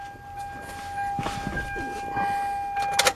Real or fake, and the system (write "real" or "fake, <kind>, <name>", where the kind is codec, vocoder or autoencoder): real